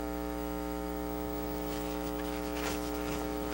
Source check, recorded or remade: remade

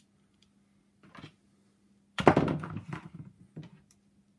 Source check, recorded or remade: recorded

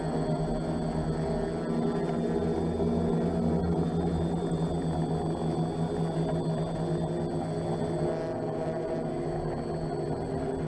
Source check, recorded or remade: recorded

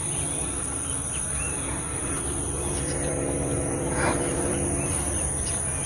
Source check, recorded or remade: remade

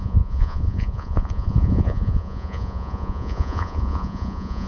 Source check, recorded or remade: remade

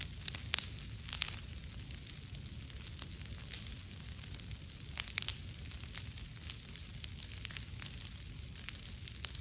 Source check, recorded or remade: recorded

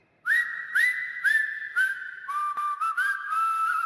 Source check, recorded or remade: remade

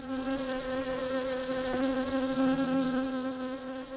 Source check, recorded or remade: remade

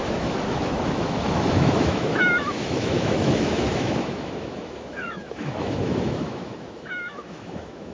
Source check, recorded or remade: remade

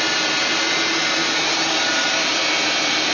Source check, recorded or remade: recorded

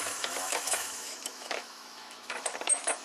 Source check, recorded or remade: remade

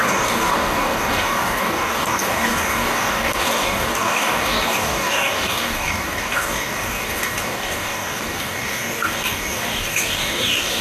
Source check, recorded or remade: remade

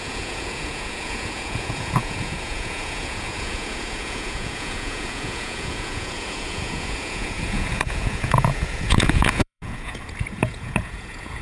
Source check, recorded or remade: remade